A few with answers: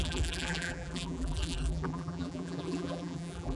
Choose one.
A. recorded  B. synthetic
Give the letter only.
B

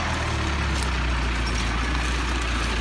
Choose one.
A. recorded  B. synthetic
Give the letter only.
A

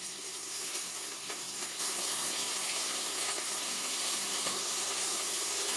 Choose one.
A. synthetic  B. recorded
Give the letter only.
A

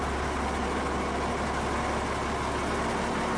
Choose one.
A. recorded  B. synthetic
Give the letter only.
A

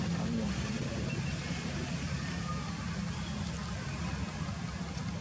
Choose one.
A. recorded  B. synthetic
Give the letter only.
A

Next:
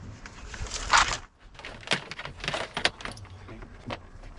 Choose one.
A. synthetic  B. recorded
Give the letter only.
B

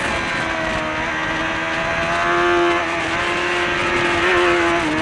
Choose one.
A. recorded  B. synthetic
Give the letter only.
A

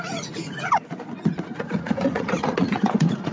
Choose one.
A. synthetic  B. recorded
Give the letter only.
A